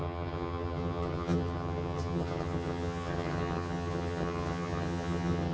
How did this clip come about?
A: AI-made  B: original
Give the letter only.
A